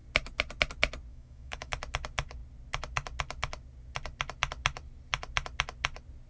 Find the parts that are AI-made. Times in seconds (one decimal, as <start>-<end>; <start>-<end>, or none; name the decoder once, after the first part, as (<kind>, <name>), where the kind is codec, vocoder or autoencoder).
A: 1.1-1.7 (autoencoder, DAC-VAE)